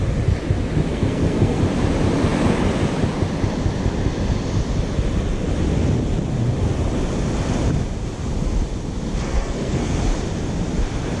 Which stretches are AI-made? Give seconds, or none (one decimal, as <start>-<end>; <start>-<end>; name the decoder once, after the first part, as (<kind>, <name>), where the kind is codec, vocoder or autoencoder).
0.9-1.6 (codec, SNAC); 9.3-10.0